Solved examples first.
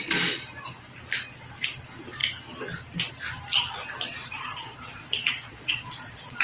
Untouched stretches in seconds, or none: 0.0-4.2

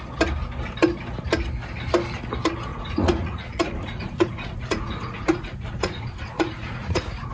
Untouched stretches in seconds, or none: 0.0-2.7

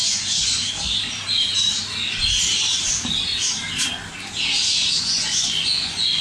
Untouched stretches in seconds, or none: 0.7-4.8

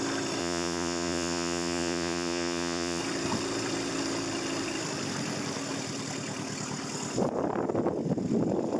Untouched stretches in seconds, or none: 0.0-0.4; 3.0-8.8

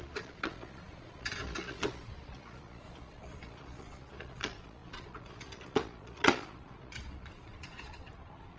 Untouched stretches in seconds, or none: none

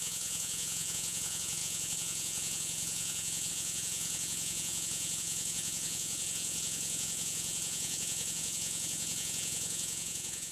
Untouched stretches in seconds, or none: none

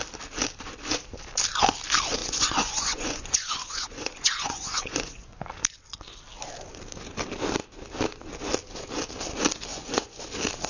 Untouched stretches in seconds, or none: 0.0-2.2; 5.5-9.7; 10.2-10.7